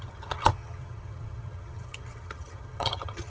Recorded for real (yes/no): no